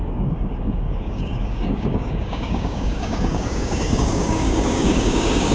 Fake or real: fake